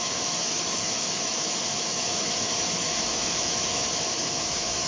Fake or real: fake